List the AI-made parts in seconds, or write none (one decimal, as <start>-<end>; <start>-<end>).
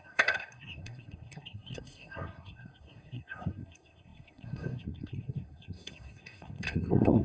0.0-7.2